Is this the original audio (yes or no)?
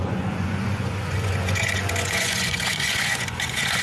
no